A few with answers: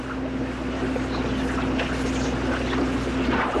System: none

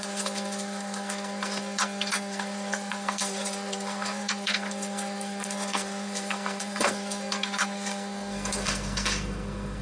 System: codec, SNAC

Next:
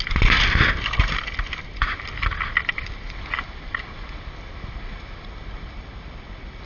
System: none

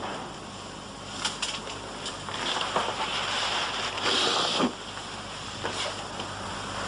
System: none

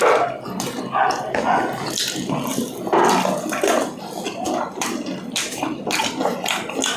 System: none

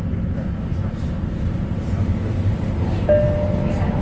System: none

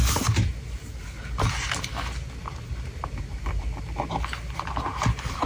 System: none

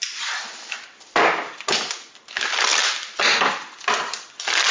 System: none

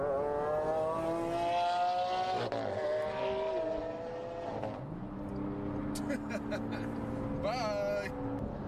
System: none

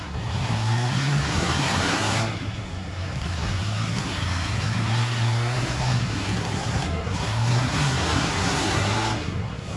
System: codec, SNAC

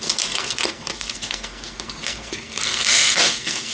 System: codec, SNAC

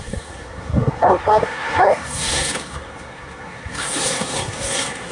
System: codec, SNAC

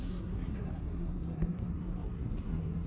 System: codec, SNAC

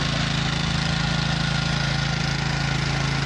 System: none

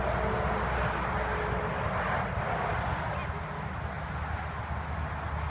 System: none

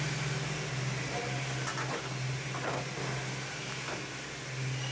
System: none